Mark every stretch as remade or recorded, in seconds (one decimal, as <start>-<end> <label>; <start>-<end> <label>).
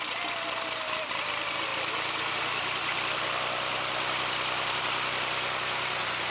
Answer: 0.0-6.3 remade